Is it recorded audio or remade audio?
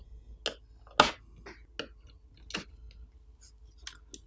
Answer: recorded